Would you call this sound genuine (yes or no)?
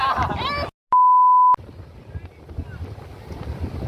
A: yes